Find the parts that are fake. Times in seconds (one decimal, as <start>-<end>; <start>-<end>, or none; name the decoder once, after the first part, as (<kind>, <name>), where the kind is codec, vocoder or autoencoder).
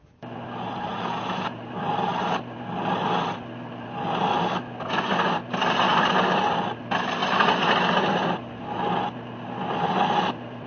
0.9-1.6 (vocoder, Vocos)